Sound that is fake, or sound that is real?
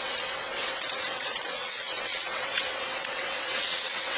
fake